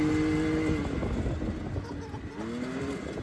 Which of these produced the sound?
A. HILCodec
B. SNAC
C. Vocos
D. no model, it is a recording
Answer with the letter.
D